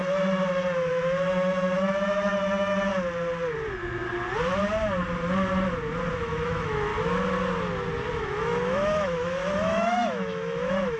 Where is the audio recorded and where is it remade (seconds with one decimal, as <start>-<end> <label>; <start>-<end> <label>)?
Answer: 0.0-0.9 recorded; 0.9-2.9 remade; 2.9-6.1 recorded; 6.1-6.9 remade; 6.9-8.1 recorded; 8.1-11.0 remade